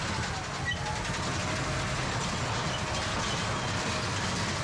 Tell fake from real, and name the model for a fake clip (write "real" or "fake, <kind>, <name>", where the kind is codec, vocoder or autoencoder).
real